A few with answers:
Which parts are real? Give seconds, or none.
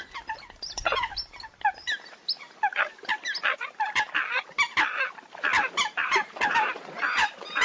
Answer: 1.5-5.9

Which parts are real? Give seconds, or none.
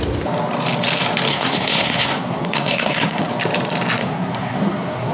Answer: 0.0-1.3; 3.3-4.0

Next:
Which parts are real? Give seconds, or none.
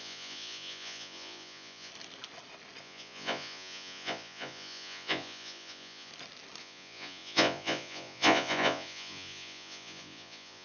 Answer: 1.9-2.8; 6.1-6.6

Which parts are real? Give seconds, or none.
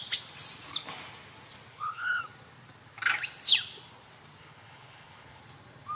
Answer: 0.0-1.7; 2.2-4.4; 5.4-6.0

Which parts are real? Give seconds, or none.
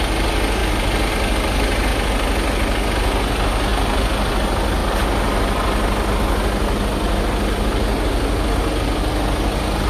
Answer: 0.0-9.9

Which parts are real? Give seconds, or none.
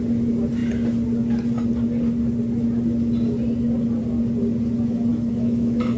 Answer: 0.0-5.1